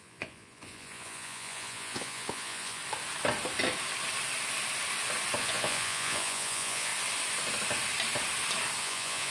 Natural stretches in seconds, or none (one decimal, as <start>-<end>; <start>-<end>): 2.8-5.4; 6.9-8.8